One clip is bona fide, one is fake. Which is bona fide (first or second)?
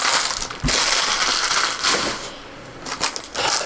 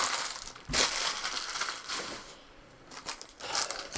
first